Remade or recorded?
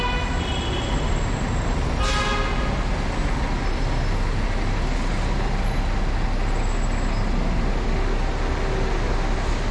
recorded